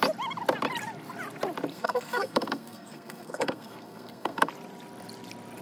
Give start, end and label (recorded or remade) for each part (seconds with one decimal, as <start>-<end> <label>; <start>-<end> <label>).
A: 0.0-1.7 recorded; 1.7-4.5 remade; 4.5-5.6 recorded

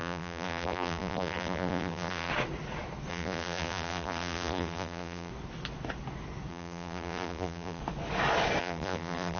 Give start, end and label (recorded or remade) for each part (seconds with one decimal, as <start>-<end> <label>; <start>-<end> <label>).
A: 0.0-2.3 remade; 2.3-3.1 recorded; 3.1-5.3 remade; 5.3-6.5 recorded; 6.5-7.8 remade; 7.8-8.6 recorded; 8.6-9.4 remade